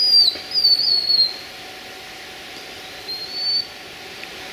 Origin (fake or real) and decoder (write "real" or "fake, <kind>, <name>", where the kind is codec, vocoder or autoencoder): real